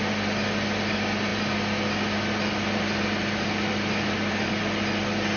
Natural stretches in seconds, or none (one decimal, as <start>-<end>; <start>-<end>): 0.0-5.4